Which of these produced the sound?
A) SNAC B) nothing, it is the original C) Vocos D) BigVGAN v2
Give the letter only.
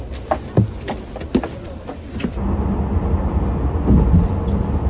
B